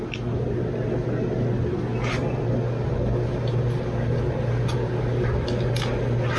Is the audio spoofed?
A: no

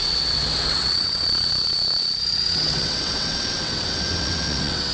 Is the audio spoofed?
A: yes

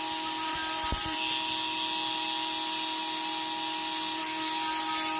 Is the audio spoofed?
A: no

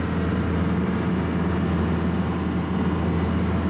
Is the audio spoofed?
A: no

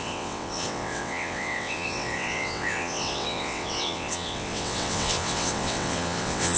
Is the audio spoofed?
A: yes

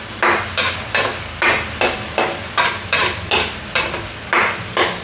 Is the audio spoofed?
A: no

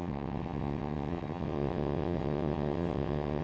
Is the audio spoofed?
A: yes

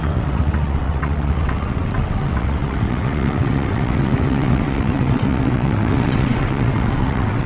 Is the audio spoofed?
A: yes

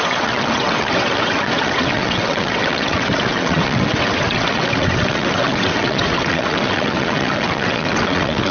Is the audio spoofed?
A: yes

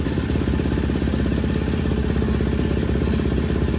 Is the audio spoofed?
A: no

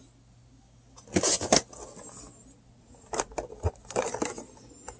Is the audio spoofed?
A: no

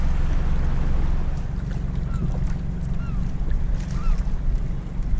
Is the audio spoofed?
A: no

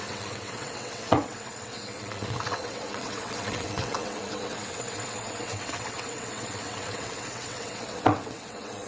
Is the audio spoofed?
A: yes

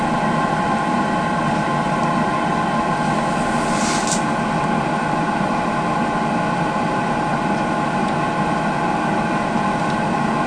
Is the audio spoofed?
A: no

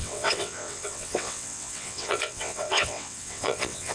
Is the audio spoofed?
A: yes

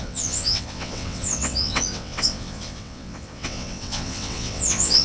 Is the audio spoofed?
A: yes